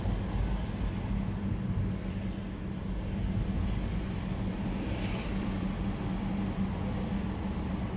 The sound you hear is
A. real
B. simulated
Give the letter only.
A